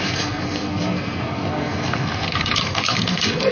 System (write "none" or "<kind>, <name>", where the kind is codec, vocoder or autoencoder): codec, SNAC